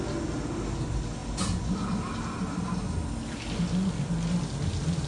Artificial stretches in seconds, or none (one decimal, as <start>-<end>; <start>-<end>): none